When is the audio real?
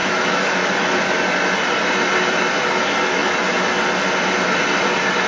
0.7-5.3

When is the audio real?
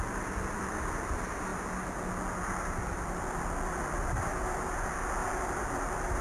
0.0-6.2